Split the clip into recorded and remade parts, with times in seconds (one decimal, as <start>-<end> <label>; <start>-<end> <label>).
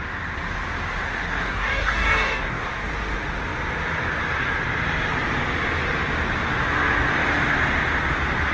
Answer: 0.0-1.3 recorded; 1.3-2.9 remade; 2.9-8.5 recorded